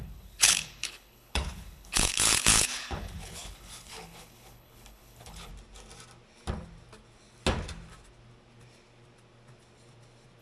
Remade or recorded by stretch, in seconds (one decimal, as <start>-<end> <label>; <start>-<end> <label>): 0.0-5.5 remade; 5.5-10.4 recorded